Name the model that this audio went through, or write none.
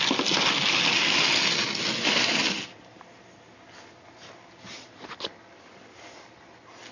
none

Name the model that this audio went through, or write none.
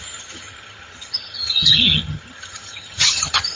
vocoder, HiFi-GAN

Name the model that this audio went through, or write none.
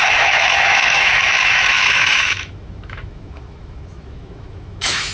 autoencoder, DAC-VAE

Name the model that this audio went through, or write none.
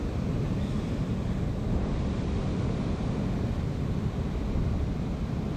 none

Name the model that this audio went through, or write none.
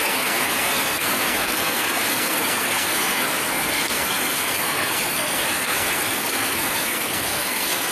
codec, SNAC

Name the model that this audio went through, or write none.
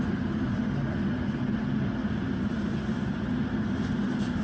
none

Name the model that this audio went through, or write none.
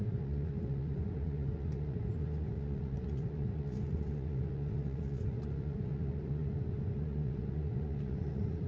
vocoder, Vocos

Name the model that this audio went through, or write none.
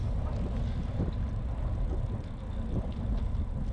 none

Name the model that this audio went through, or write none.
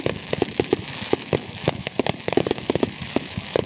autoencoder, DAC-VAE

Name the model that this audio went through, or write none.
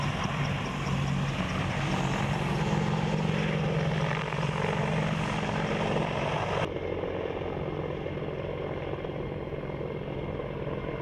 none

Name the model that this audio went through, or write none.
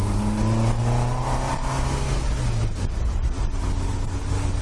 none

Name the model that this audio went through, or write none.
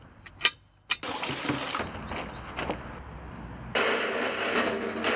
none